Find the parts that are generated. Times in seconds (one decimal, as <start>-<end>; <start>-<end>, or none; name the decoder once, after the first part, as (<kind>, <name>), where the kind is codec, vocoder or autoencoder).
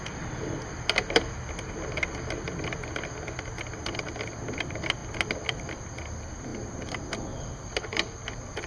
none